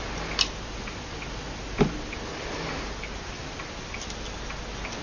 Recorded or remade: recorded